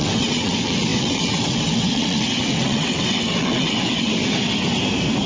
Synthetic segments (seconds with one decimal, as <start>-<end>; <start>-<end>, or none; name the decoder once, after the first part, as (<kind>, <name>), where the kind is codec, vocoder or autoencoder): 0.0-4.1 (vocoder, WaveNeXt)